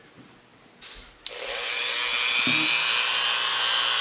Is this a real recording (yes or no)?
yes